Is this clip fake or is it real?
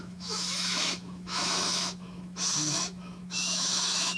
fake